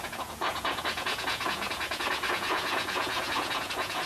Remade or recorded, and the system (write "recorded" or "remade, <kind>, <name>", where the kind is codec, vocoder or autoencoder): remade, vocoder, Vocos